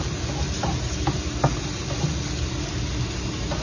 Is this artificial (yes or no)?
no